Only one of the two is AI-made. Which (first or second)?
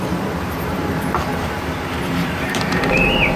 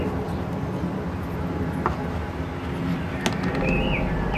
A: first